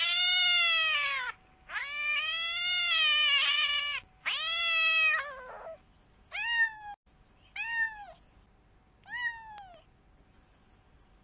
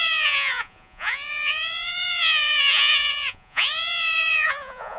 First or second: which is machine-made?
second